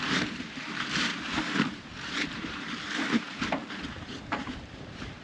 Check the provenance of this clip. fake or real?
fake